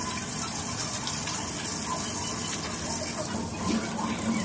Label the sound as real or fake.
real